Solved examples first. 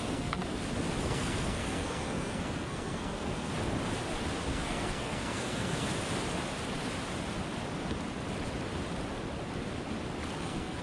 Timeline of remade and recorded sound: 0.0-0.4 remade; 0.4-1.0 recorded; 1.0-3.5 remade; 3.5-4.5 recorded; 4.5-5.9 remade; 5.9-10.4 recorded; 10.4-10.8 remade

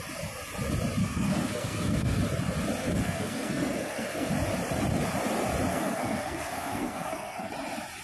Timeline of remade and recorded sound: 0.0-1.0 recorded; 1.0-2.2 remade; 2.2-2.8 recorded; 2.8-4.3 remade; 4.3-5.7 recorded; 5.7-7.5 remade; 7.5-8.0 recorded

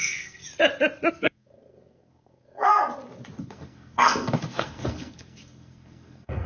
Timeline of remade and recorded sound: 0.0-0.4 remade; 0.4-1.1 recorded; 1.1-2.8 remade; 2.8-3.4 recorded; 3.4-6.5 remade

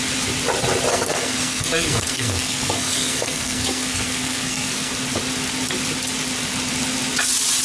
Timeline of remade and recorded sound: 0.0-0.9 recorded; 0.9-4.9 remade; 4.9-7.6 recorded

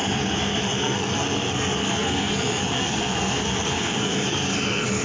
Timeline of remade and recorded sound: 0.0-5.0 remade

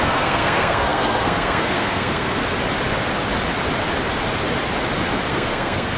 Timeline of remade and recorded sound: 0.0-2.4 remade; 2.4-5.3 recorded; 5.3-6.0 remade

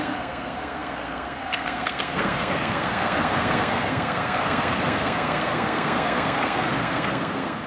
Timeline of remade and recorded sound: 0.0-7.7 remade

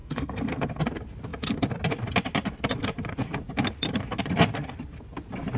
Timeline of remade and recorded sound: 0.0-0.8 remade; 0.8-5.6 recorded